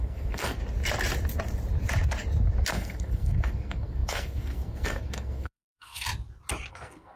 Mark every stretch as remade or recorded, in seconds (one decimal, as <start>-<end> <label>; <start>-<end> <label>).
0.0-0.6 remade; 0.6-2.7 recorded; 2.7-6.1 remade; 6.1-6.7 recorded; 6.7-7.2 remade